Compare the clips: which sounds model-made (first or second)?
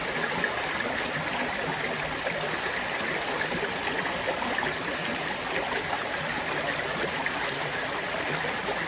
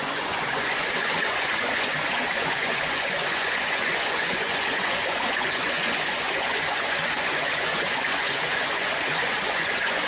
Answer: second